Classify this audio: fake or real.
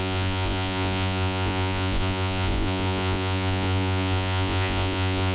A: fake